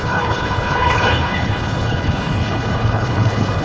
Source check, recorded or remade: remade